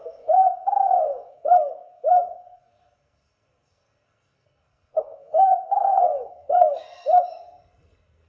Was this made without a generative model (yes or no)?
no